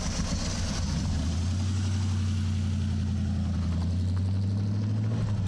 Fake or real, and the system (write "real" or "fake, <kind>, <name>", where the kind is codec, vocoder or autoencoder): real